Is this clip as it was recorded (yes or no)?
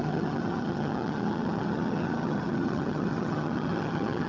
no